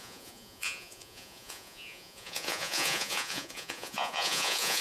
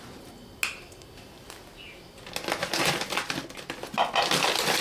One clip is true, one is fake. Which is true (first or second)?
second